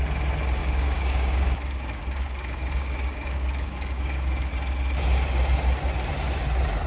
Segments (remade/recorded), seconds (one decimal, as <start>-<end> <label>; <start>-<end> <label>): 0.0-0.6 recorded; 0.6-4.5 remade; 4.5-6.9 recorded

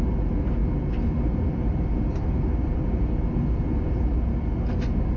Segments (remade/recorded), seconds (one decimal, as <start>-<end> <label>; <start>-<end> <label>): 0.0-4.3 recorded; 4.3-4.8 remade; 4.8-5.2 recorded

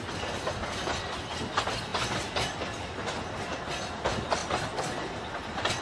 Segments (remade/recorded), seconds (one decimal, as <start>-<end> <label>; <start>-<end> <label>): 0.0-5.8 recorded